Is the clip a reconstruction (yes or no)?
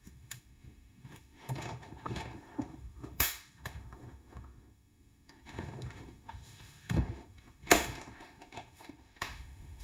yes